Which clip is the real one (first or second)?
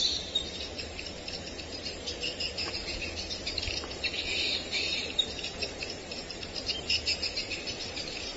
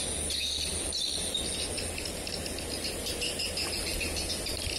second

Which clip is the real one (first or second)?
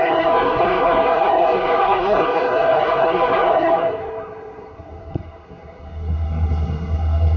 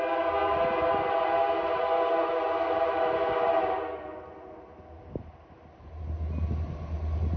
second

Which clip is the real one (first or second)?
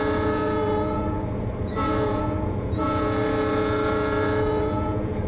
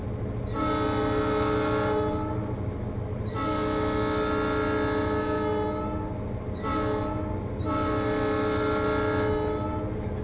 second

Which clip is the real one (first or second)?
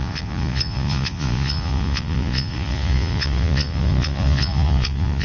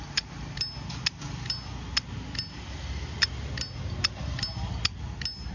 second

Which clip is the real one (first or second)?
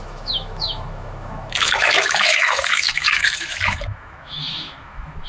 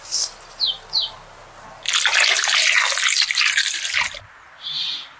second